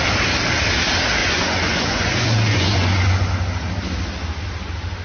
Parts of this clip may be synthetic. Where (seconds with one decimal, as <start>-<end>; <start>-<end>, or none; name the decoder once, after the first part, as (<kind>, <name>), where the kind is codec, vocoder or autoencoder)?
1.2-3.3 (vocoder, Vocos)